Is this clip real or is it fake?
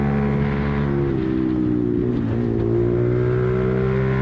real